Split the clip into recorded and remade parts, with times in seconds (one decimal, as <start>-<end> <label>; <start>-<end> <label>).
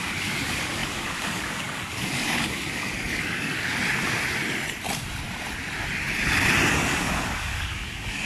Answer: 0.0-3.8 remade; 3.8-6.7 recorded; 6.7-8.3 remade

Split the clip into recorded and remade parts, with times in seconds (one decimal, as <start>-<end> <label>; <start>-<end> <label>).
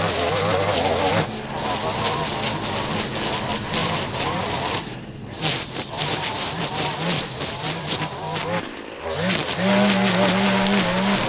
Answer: 0.0-3.8 recorded; 3.8-8.1 remade; 8.1-11.3 recorded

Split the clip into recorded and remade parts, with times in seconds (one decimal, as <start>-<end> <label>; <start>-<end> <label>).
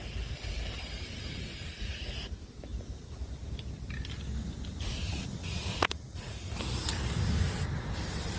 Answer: 0.0-1.6 recorded; 1.6-2.1 remade; 2.1-5.1 recorded; 5.1-6.4 remade; 6.4-8.4 recorded